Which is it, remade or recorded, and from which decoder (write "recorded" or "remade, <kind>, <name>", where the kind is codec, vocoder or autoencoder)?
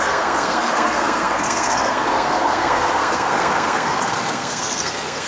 remade, codec, SNAC